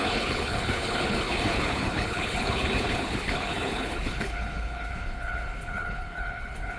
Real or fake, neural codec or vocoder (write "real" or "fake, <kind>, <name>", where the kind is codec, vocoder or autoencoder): fake, codec, HILCodec